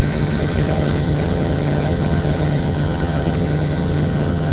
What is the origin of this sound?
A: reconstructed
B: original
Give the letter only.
A